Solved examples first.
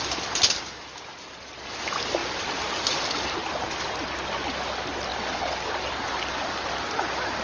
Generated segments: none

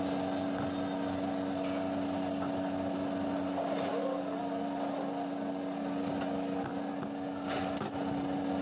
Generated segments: 3.9-4.4 (codec, DAC)

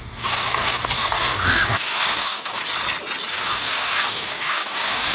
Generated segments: 0.0-2.6 (codec, DAC); 3.3-5.1